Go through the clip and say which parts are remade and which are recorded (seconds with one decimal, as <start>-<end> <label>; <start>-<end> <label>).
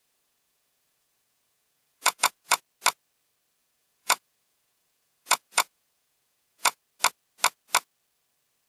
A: 0.0-2.6 remade; 2.6-3.6 recorded; 3.6-6.8 remade; 6.8-8.7 recorded